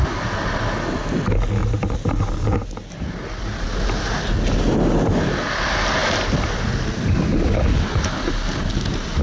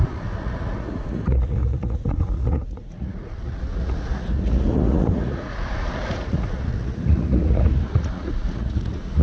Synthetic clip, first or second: second